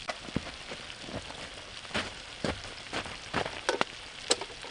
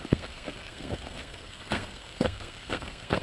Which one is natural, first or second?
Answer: first